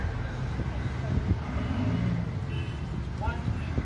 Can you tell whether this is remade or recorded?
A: recorded